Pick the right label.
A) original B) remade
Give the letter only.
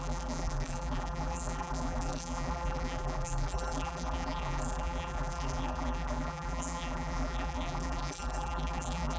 B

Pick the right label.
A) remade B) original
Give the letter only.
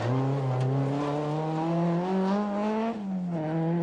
B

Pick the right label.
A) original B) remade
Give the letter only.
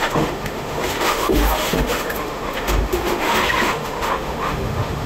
B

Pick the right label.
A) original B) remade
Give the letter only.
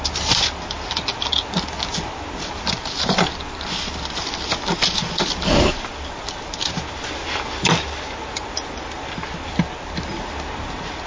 A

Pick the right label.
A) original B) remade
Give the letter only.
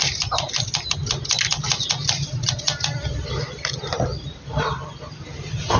A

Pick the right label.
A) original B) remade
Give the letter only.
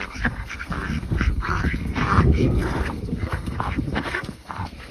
B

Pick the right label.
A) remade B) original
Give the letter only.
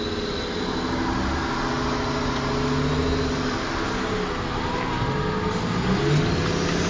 B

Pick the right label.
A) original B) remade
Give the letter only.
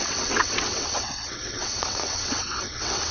B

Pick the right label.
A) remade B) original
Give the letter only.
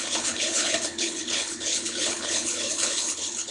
A